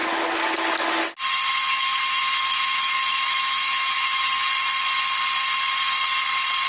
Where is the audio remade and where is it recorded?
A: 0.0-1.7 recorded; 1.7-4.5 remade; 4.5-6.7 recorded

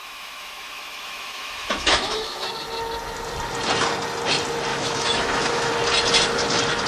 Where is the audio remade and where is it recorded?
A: 0.0-2.5 remade; 2.5-4.7 recorded; 4.7-5.7 remade; 5.7-6.9 recorded

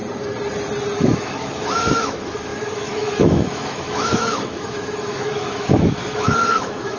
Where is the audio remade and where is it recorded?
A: 0.0-1.0 recorded; 1.0-7.0 remade

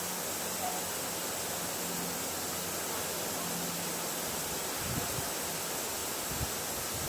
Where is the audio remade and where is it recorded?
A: 0.0-7.1 recorded

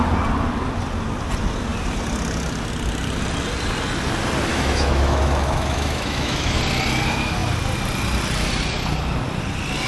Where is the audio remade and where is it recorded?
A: 0.0-4.5 recorded; 4.5-6.6 remade; 6.6-9.9 recorded

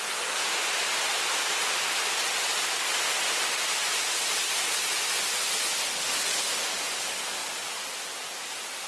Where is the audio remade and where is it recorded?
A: 0.0-8.9 recorded

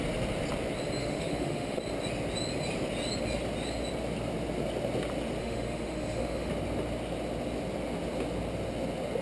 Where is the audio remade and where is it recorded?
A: 0.0-1.0 recorded; 1.0-1.8 remade; 1.8-5.4 recorded; 5.4-6.5 remade; 6.5-9.2 recorded